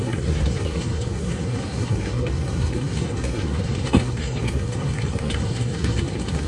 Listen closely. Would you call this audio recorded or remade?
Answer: remade